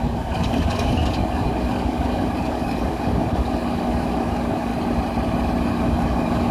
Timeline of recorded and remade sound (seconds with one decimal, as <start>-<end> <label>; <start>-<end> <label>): 0.0-4.7 remade; 4.7-5.6 recorded; 5.6-6.5 remade